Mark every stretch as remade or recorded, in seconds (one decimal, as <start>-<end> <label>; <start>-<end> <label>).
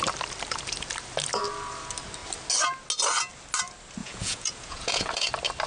0.0-4.0 recorded; 4.0-5.3 remade; 5.3-5.7 recorded